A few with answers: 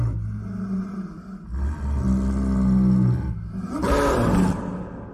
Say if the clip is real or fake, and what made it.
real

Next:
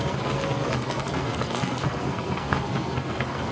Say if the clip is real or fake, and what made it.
fake, codec, SNAC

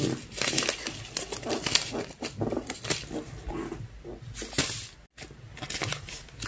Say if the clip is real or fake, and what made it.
real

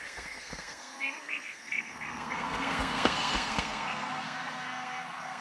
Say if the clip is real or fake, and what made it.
fake, codec, SNAC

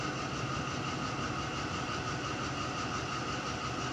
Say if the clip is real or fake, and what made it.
real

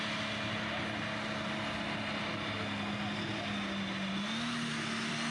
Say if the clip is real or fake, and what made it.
real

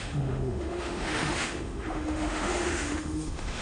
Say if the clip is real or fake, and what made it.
fake, autoencoder, DAC-VAE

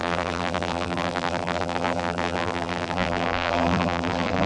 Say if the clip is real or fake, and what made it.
fake, vocoder, BigVGAN v2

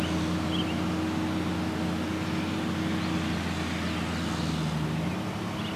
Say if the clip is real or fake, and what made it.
real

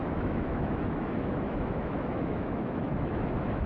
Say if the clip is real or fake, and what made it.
fake, autoencoder, DAC-VAE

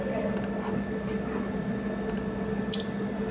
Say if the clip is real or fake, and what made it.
real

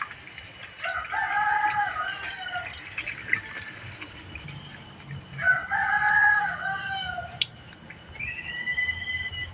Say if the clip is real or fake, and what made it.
real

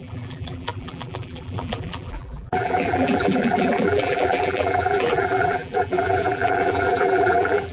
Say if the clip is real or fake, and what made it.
fake, vocoder, BigVGAN v2